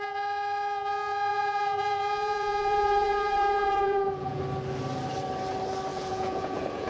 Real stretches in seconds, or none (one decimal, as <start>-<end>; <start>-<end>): 0.0-1.3; 4.4-5.9